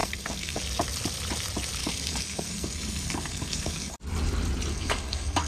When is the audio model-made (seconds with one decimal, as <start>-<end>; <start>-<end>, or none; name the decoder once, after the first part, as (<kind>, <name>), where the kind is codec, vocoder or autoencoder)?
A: 0.0-0.6 (codec, SNAC); 1.8-4.0; 4.7-5.5